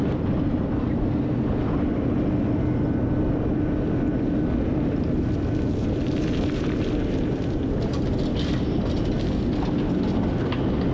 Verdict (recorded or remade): recorded